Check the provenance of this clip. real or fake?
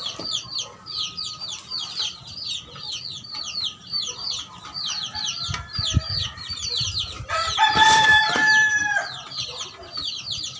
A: fake